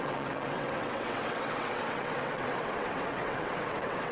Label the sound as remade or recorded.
remade